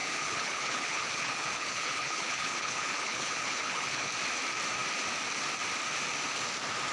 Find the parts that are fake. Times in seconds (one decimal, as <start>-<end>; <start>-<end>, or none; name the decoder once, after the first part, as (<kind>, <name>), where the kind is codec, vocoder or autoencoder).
0.0-4.1 (codec, HILCodec)